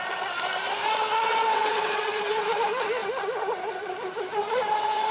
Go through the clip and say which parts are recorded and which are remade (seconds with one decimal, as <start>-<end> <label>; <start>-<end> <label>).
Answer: 0.0-1.3 recorded; 1.3-2.2 remade; 2.2-5.1 recorded